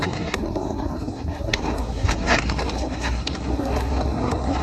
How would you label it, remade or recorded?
remade